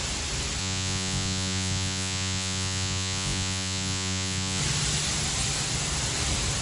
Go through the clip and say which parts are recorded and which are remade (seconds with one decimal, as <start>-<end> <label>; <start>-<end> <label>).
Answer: 0.0-0.6 recorded; 0.6-4.6 remade; 4.6-6.6 recorded